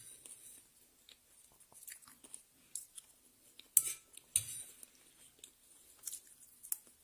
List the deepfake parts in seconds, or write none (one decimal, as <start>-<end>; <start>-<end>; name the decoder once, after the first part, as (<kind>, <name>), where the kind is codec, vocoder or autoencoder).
none